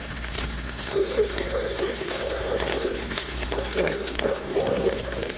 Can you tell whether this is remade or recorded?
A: remade